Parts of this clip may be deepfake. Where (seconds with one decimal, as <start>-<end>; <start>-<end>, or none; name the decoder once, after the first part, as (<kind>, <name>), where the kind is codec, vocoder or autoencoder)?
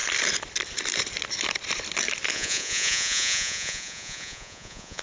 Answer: 2.3-5.0 (vocoder, Vocos)